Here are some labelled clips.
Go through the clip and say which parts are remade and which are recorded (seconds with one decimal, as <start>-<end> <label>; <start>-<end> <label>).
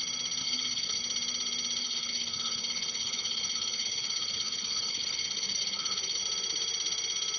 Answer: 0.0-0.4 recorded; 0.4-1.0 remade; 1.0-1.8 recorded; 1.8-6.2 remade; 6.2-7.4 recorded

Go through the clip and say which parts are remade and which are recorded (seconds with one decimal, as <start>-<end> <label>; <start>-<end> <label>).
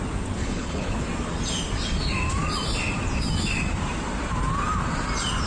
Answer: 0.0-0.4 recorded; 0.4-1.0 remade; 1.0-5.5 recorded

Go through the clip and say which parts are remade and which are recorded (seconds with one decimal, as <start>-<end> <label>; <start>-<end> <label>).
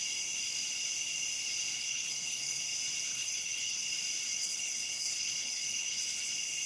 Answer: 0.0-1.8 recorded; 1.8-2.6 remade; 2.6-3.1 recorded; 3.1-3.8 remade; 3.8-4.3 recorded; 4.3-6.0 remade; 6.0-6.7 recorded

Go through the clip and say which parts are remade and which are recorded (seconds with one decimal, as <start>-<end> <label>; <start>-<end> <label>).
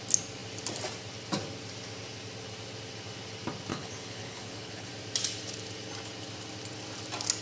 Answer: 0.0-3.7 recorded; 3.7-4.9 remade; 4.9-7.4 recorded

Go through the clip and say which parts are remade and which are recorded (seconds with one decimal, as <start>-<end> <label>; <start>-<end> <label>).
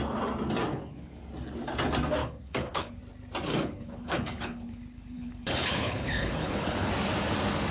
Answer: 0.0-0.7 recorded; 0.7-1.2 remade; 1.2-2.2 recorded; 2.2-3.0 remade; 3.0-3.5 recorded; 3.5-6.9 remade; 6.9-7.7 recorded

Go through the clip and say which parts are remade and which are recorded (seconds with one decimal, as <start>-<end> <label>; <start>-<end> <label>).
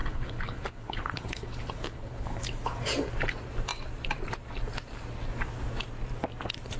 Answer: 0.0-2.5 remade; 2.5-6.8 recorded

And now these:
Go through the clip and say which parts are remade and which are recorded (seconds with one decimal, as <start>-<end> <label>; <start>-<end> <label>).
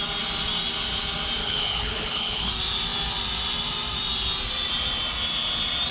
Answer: 0.0-1.4 recorded; 1.4-2.5 remade; 2.5-5.9 recorded